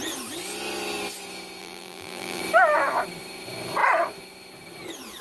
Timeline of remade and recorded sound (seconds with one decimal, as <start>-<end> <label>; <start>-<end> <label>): 0.0-1.6 recorded; 1.6-2.4 remade; 2.4-5.2 recorded